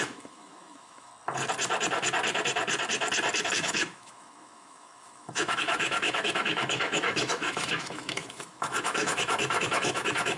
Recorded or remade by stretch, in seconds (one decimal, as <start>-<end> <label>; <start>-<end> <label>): 0.0-1.1 remade; 1.1-3.5 recorded; 3.5-10.4 remade